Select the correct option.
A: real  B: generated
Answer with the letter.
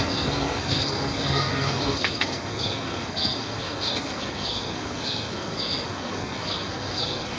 B